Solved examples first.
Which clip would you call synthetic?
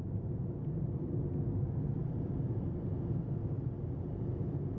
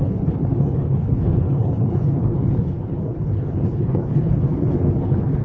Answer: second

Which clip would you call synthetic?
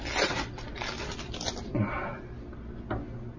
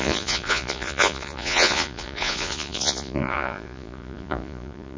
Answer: second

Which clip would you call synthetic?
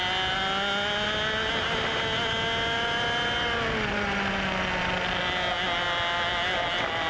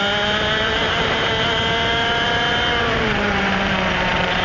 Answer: second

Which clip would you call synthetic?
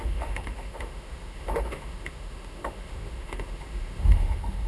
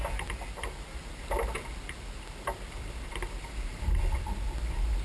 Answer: first